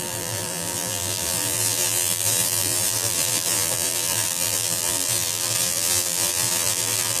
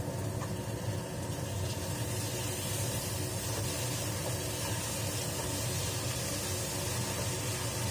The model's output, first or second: first